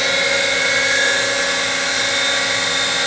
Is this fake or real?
real